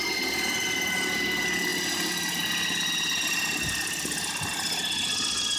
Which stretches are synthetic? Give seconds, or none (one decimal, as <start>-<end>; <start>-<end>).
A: none

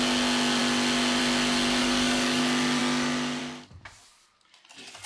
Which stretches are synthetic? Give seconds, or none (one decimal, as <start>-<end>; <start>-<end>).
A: 1.8-2.4

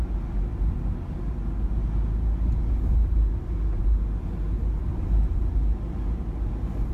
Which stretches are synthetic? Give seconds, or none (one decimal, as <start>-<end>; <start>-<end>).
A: none

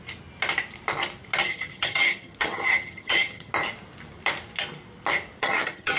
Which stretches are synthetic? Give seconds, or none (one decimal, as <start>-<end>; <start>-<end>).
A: 1.4-3.5; 5.4-6.0

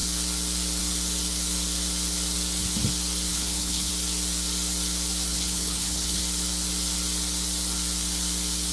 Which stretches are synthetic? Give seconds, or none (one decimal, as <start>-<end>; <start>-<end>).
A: 3.3-3.9; 5.3-6.2